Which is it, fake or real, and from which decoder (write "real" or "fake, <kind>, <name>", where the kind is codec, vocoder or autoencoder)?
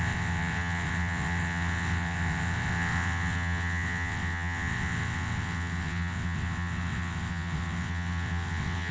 fake, vocoder, WaveNeXt